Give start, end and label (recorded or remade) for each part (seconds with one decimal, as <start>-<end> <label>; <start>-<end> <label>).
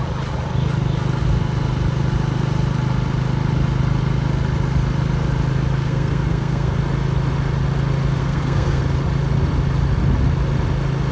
0.0-5.8 recorded; 5.8-6.8 remade; 6.8-8.2 recorded; 8.2-8.8 remade; 8.8-11.1 recorded